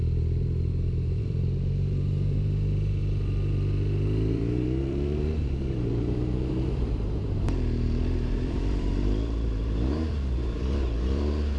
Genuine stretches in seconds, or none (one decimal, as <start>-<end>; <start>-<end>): 3.0-4.3